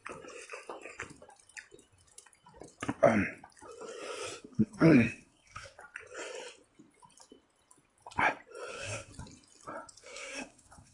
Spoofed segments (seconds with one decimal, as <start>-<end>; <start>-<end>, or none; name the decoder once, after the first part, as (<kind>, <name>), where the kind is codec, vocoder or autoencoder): 4.4-5.8 (codec, SNAC); 8.7-9.1; 10.0-10.9